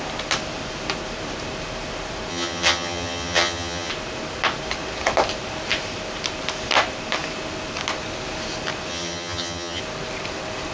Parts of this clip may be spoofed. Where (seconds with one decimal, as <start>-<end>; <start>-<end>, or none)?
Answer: 2.3-3.9; 8.9-9.8